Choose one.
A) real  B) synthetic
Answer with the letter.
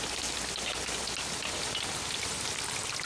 A